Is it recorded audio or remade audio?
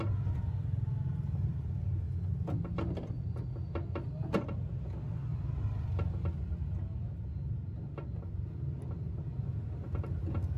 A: recorded